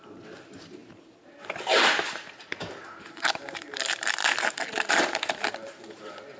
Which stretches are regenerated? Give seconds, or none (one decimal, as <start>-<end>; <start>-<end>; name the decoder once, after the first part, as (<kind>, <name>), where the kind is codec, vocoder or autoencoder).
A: 0.0-4.2 (vocoder, BigVGAN v2); 4.9-6.4